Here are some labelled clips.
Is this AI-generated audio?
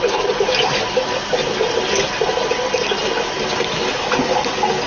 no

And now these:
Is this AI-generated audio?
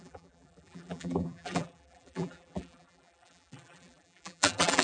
yes